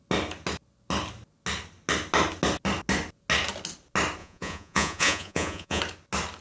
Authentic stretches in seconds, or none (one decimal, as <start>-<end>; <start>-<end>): 0.0-4.2; 5.8-6.4